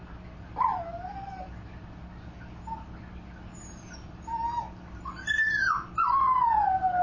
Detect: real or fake real